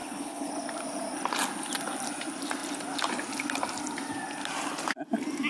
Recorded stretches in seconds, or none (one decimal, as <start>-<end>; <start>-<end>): 0.5-5.5